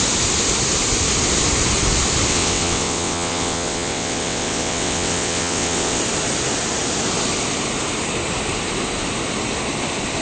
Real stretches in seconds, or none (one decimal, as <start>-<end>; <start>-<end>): 0.0-2.3; 6.0-10.2